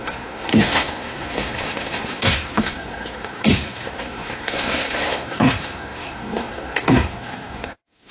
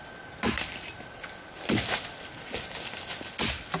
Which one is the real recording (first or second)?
second